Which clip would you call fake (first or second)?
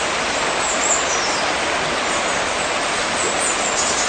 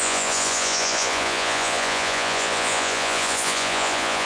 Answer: second